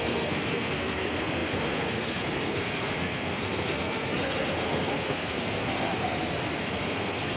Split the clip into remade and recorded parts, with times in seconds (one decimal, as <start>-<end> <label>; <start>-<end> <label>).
0.0-5.9 remade; 5.9-6.6 recorded; 6.6-7.4 remade